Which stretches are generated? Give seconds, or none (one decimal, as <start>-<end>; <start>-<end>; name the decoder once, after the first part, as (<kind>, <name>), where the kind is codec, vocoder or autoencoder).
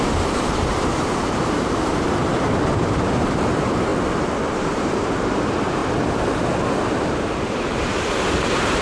0.0-3.9 (vocoder, BigVGAN v2); 4.8-5.8; 7.0-8.8